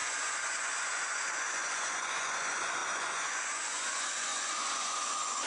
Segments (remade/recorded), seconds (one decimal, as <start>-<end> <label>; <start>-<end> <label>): 0.0-5.5 remade